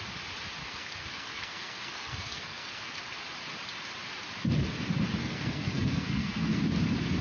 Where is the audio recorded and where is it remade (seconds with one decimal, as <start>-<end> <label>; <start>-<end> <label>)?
0.0-0.6 recorded; 0.6-3.0 remade; 3.0-5.2 recorded; 5.2-6.6 remade; 6.6-7.2 recorded